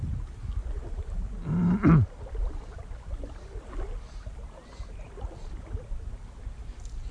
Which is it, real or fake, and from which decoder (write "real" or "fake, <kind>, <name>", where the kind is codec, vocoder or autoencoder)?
real